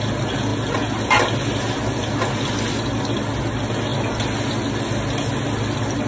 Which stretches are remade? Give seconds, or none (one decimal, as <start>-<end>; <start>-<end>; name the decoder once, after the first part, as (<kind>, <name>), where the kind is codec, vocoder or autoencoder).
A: none